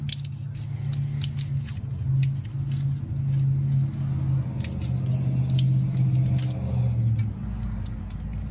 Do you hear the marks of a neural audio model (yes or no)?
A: no